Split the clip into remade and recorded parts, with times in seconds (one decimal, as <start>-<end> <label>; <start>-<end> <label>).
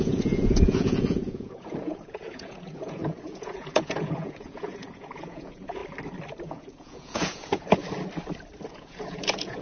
0.0-5.8 remade; 5.8-6.4 recorded; 6.4-7.8 remade; 7.8-8.7 recorded; 8.7-9.6 remade